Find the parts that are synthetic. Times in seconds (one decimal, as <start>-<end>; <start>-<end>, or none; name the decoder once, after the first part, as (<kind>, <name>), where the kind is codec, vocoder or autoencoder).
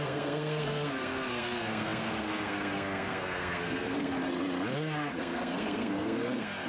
0.0-4.2 (codec, SNAC); 5.2-6.7